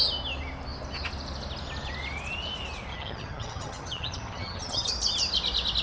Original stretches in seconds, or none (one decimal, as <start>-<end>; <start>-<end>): 0.0-2.9; 4.9-5.8